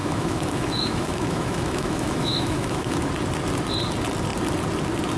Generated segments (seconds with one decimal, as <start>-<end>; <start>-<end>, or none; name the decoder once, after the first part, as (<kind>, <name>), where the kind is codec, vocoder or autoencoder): 0.0-3.1 (autoencoder, DAC-VAE)